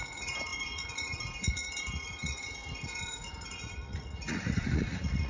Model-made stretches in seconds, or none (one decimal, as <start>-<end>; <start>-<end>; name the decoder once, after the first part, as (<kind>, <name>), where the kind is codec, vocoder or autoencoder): 0.0-5.3 (vocoder, Vocos)

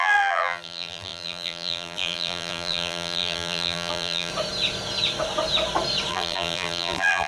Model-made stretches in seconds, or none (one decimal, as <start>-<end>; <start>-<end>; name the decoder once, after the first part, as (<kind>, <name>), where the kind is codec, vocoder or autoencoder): 0.0-4.3 (vocoder, BigVGAN v2); 6.1-7.3

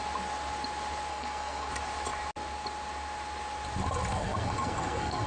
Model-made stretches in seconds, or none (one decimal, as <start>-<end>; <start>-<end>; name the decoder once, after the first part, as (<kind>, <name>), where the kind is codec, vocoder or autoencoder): 1.1-1.7 (codec, SNAC); 4.1-5.3

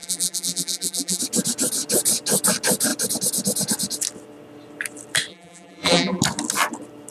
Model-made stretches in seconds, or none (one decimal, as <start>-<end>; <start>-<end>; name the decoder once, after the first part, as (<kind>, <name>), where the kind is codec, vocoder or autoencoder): 0.0-1.2 (vocoder, BigVGAN v2); 5.3-6.2

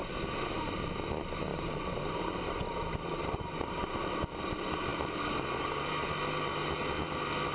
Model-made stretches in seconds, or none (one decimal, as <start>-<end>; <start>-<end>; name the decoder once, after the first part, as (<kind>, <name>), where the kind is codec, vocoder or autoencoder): 1.5-3.7 (vocoder, BigVGAN v2); 4.9-6.1